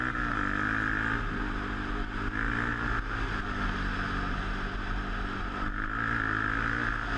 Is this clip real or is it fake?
real